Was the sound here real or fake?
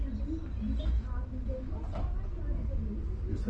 real